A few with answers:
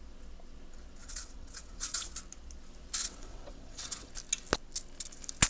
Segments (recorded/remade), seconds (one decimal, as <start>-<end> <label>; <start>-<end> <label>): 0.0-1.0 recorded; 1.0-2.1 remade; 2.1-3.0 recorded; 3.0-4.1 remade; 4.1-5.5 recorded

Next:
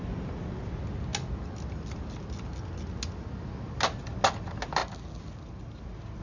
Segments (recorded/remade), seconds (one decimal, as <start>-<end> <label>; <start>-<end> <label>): 0.0-6.2 recorded

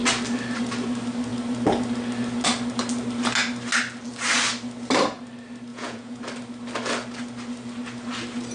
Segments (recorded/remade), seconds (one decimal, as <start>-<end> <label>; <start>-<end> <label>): 0.0-5.7 recorded; 5.7-6.2 remade; 6.2-8.5 recorded